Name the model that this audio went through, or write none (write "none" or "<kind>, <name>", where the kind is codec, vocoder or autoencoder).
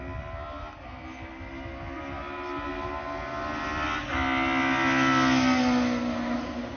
none